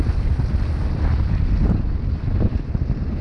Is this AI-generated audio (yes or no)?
no